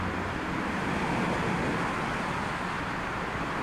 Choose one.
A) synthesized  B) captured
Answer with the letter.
B